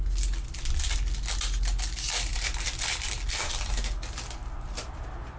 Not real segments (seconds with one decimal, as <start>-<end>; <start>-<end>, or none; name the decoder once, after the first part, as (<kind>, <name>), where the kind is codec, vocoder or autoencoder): 2.3-3.7 (vocoder, BigVGAN v2); 4.4-5.4